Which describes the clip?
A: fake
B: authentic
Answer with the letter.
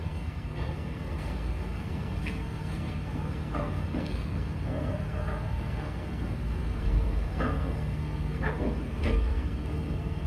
A